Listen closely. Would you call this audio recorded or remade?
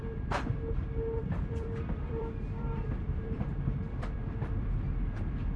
remade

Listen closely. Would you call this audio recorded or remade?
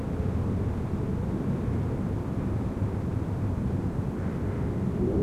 remade